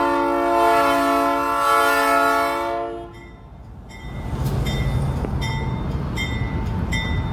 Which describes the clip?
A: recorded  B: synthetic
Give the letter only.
A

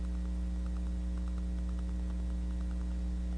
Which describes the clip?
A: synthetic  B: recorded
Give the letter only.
B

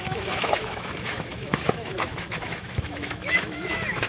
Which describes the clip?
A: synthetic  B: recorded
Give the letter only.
A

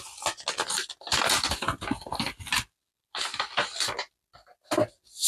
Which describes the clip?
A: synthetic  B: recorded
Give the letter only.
B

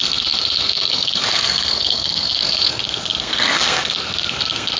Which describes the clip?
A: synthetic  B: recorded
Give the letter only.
A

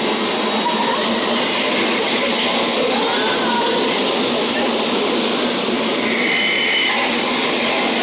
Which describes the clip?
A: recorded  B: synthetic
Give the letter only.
A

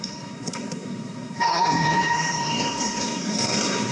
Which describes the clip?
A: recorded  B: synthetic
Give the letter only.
B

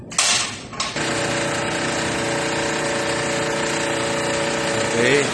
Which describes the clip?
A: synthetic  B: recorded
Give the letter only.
B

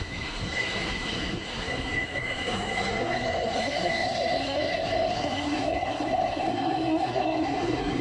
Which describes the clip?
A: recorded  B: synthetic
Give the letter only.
B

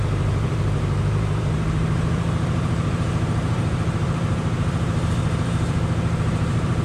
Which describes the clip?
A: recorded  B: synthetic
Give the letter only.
B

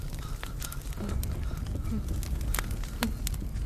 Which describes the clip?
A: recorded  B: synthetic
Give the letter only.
A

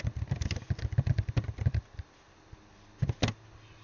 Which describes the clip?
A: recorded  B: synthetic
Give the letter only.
A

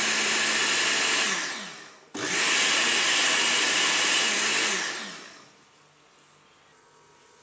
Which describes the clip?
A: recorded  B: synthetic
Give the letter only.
A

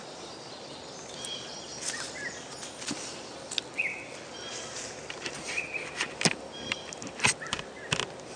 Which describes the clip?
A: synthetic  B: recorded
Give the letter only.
B